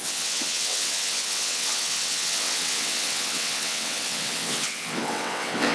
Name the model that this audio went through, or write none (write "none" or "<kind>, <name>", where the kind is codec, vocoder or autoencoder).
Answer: vocoder, WaveNeXt